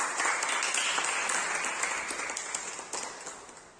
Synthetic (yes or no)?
no